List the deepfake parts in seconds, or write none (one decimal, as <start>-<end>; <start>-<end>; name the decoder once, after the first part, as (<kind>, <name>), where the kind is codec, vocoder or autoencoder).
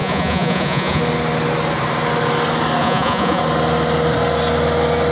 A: 0.0-1.0 (vocoder, Vocos); 2.8-3.4